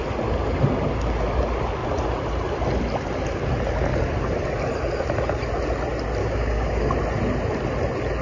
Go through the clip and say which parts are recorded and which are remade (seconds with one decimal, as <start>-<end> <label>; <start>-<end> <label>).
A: 0.0-6.2 recorded; 6.2-6.9 remade; 6.9-8.2 recorded